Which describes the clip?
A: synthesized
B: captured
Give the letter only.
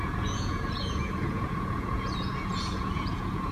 A